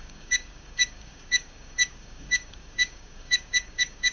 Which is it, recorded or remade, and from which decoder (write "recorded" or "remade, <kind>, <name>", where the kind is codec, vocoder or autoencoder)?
remade, codec, DAC